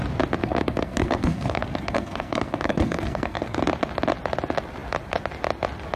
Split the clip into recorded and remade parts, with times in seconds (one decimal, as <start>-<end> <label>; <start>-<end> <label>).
0.0-0.4 recorded; 0.4-3.6 remade; 3.6-6.0 recorded